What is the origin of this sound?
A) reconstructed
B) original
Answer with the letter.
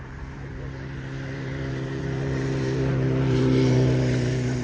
A